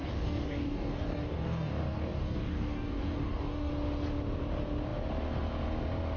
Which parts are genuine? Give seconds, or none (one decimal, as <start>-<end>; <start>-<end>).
3.7-6.2